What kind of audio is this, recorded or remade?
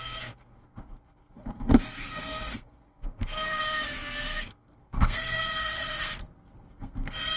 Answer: remade